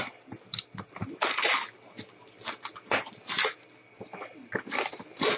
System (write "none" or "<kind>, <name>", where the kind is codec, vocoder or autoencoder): none